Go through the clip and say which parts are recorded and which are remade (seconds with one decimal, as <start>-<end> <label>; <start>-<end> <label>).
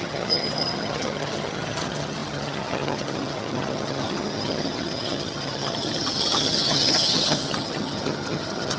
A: 0.0-8.8 remade